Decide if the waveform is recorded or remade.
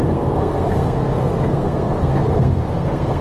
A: remade